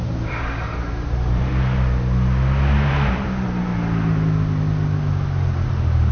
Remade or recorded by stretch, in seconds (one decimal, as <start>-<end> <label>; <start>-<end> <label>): 0.0-1.5 remade; 1.5-2.9 recorded; 2.9-3.7 remade; 3.7-6.1 recorded